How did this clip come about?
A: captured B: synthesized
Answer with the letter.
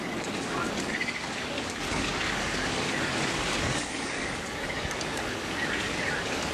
B